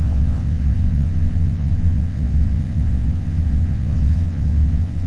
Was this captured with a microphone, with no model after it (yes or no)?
no